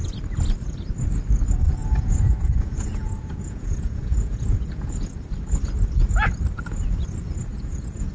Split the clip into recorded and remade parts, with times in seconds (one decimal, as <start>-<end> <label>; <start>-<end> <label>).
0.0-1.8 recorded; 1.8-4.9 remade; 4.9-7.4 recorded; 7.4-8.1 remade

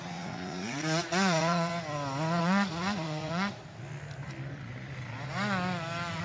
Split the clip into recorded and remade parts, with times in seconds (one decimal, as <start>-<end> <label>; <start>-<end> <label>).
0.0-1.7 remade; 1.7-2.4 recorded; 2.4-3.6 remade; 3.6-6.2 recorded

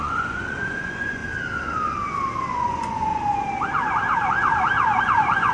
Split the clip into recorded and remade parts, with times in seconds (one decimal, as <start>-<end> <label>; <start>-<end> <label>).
0.0-1.2 remade; 1.2-2.5 recorded; 2.5-3.1 remade; 3.1-5.0 recorded; 5.0-5.5 remade

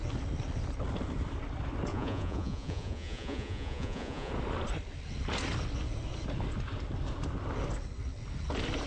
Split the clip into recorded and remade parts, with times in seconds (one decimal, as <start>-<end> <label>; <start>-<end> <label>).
0.0-1.9 recorded; 1.9-4.3 remade; 4.3-8.9 recorded